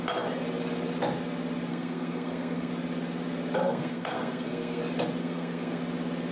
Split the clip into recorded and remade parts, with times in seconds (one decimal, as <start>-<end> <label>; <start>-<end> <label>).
0.0-1.7 recorded; 1.7-2.7 remade; 2.7-3.6 recorded; 3.6-4.8 remade; 4.8-5.2 recorded; 5.2-5.8 remade; 5.8-6.3 recorded